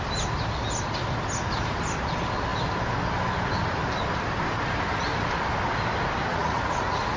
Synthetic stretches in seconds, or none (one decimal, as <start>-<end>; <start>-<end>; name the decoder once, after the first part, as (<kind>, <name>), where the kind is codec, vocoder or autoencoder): 6.3-7.2 (vocoder, Vocos)

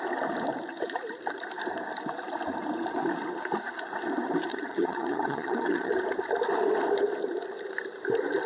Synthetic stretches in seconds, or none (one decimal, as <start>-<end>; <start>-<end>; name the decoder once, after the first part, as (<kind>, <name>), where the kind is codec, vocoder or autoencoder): 4.5-5.9 (vocoder, HiFi-GAN)

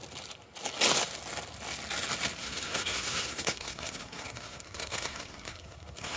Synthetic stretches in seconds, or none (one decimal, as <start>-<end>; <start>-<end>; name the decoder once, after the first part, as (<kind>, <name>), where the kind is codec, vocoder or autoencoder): 2.4-6.2 (codec, SNAC)